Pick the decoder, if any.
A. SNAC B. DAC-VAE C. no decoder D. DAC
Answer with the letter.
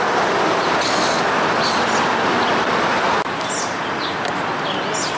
C